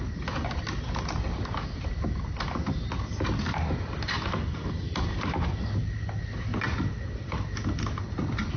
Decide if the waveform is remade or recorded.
recorded